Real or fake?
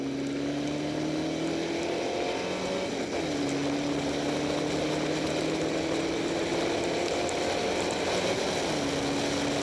real